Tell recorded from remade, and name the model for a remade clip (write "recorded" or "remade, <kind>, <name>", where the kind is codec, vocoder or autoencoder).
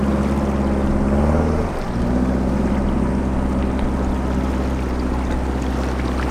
recorded